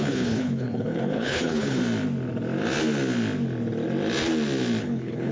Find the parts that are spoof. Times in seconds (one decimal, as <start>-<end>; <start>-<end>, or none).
0.0-1.8; 4.8-5.3